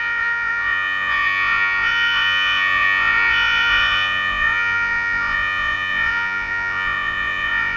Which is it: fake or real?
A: fake